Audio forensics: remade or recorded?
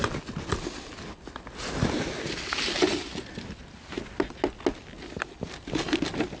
recorded